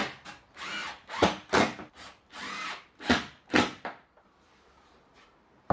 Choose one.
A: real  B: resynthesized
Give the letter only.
A